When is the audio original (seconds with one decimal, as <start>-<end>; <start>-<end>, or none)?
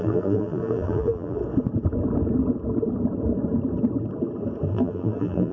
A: 1.4-4.7